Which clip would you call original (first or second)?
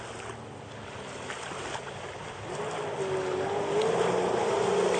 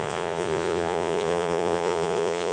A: first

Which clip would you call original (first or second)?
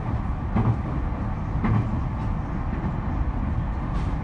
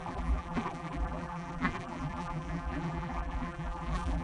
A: first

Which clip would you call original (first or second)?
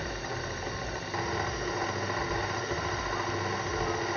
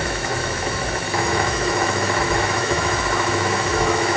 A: first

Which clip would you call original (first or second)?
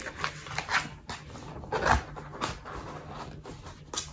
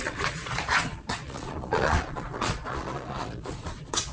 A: first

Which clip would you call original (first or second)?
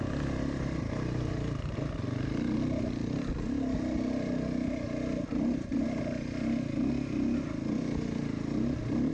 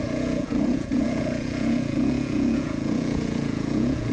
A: first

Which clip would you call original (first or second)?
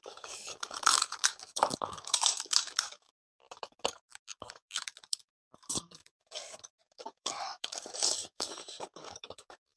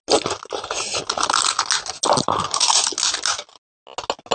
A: second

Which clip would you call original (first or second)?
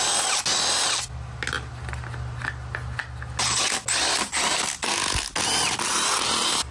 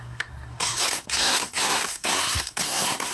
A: first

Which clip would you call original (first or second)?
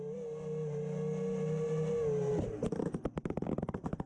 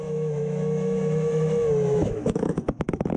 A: first